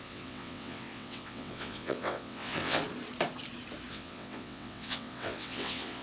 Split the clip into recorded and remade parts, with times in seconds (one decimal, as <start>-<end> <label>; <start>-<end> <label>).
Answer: 0.0-2.8 remade; 2.8-3.9 recorded; 3.9-6.0 remade